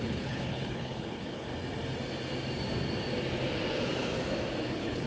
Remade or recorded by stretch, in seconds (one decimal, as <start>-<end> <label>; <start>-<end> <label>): 0.0-1.5 remade; 1.5-4.6 recorded; 4.6-5.1 remade